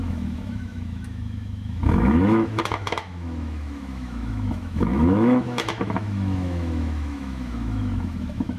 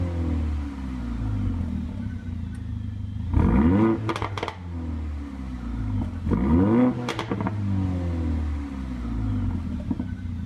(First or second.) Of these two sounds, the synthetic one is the first